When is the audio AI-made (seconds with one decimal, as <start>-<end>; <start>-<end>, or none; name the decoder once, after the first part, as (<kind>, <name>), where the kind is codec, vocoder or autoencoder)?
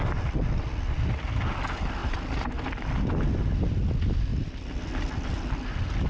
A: none